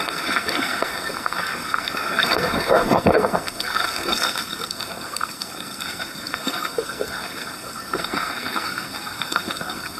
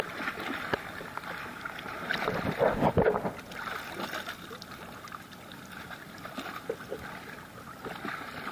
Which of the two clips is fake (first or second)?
first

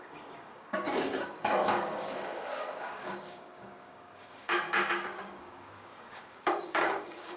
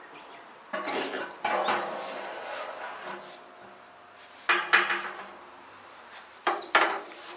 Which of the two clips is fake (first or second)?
first